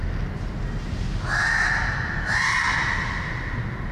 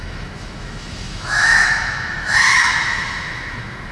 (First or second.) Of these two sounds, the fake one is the second